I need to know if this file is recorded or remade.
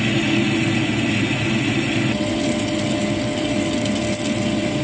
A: recorded